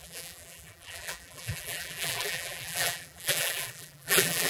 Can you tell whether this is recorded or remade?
remade